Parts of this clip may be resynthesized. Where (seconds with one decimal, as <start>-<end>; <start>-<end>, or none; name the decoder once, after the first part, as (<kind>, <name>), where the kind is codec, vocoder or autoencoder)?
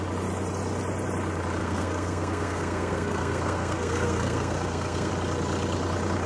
1.6-5.1 (codec, SNAC)